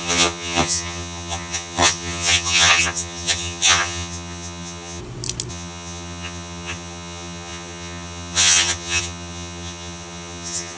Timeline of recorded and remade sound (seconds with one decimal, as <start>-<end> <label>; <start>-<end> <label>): 0.0-5.0 remade; 5.0-5.5 recorded; 5.5-10.8 remade